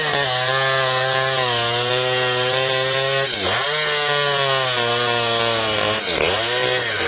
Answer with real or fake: real